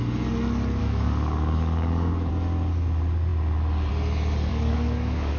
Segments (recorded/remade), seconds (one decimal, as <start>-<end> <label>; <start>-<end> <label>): 0.0-0.8 recorded; 0.8-2.3 remade; 2.3-4.5 recorded; 4.5-5.4 remade